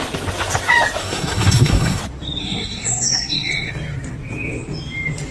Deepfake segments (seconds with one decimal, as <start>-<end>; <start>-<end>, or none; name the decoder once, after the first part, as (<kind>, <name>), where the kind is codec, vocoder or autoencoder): 1.0-2.0 (codec, SNAC); 2.4-3.7